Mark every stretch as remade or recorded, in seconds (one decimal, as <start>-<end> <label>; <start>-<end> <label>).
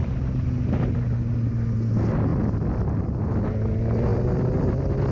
0.0-5.1 recorded